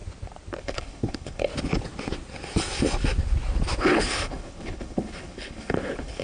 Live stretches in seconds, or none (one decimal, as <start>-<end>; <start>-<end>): 0.0-0.6; 1.5-3.8